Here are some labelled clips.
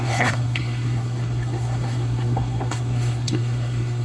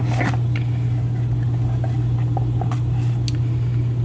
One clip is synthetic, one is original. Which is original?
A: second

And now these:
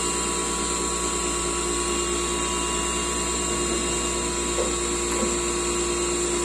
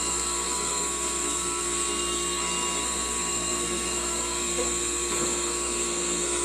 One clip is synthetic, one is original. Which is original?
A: first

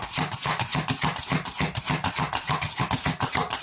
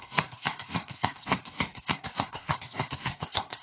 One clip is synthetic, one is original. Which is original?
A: first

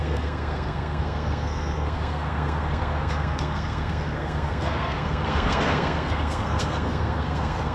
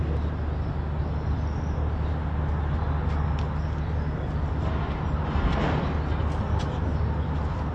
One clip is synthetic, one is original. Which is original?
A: second